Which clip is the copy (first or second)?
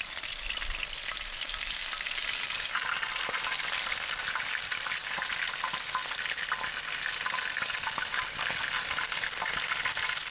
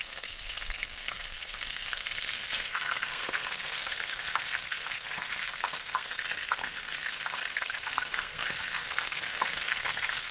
second